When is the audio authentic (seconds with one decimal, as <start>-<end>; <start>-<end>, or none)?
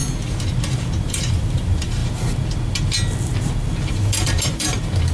0.0-1.0; 2.0-3.9